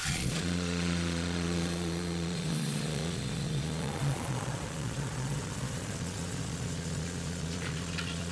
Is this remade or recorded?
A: remade